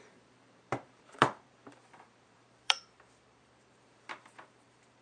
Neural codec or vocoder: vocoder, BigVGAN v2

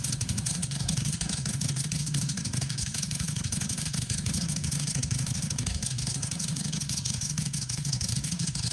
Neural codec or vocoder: codec, SNAC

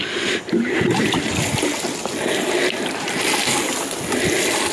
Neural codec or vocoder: none